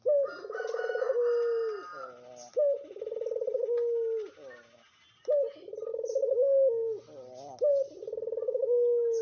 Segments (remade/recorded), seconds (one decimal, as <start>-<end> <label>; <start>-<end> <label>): 0.0-9.2 recorded